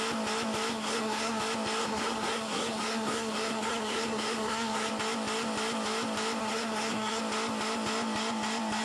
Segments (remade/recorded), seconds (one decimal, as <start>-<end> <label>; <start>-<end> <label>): 0.0-0.7 recorded; 0.7-1.4 remade; 1.4-1.8 recorded; 1.8-4.9 remade; 4.9-6.4 recorded; 6.4-7.2 remade; 7.2-8.8 recorded